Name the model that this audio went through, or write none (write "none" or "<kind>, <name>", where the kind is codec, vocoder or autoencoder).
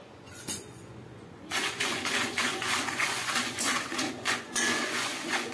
vocoder, Vocos